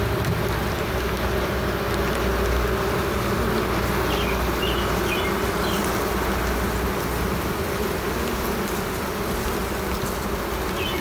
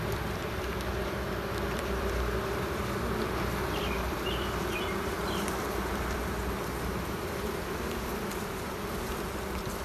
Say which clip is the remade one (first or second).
second